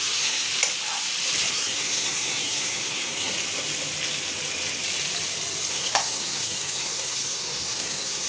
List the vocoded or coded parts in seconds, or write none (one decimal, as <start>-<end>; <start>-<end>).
0.0-0.5; 1.5-3.3; 5.7-8.3